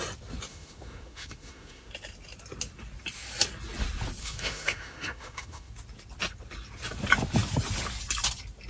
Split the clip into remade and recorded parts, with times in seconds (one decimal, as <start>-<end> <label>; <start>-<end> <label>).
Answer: 0.0-0.5 recorded; 0.5-1.9 remade; 1.9-4.2 recorded; 4.2-5.7 remade; 5.7-8.7 recorded